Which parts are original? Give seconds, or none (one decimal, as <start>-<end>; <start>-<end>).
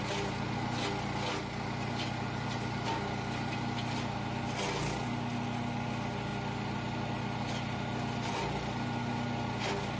0.0-10.0